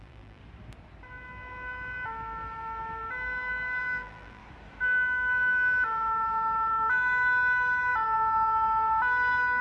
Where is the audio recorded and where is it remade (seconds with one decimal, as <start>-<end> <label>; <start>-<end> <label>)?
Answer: 0.0-0.4 remade; 0.4-3.8 recorded; 3.8-4.4 remade; 4.4-9.6 recorded